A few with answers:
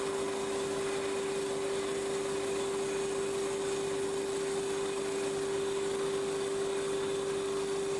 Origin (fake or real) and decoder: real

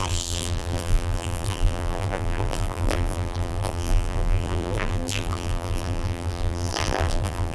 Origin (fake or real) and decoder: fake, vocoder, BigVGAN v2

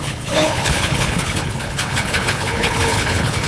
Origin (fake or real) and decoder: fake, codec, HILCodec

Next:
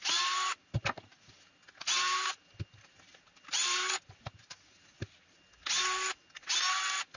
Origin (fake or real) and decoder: real